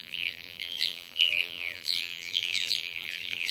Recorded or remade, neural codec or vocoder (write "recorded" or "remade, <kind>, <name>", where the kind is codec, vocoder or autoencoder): remade, vocoder, BigVGAN v2